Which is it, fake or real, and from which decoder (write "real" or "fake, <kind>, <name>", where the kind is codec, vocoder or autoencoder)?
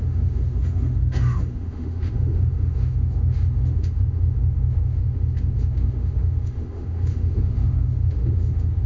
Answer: fake, autoencoder, DAC-VAE